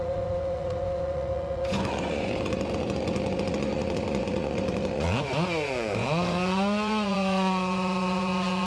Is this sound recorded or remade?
remade